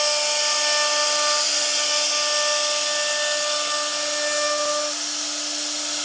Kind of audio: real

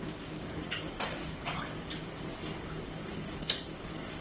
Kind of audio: fake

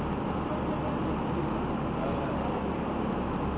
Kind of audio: real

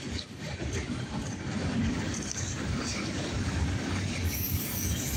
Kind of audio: fake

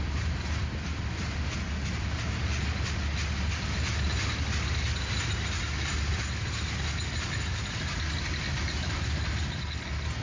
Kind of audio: real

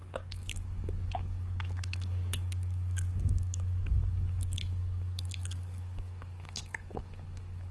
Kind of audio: fake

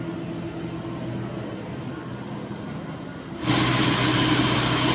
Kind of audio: real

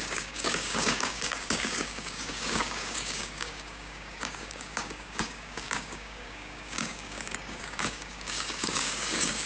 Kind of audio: fake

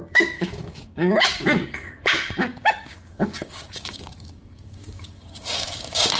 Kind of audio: fake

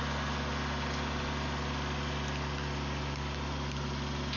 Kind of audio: real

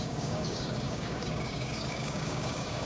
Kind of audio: fake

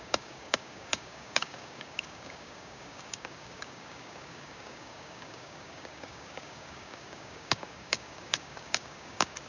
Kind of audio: fake